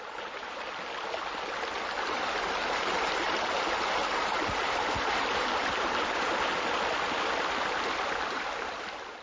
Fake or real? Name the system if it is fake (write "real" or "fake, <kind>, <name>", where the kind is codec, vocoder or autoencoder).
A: real